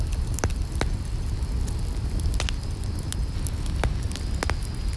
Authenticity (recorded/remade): recorded